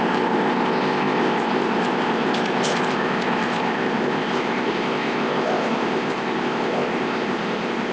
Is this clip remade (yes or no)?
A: yes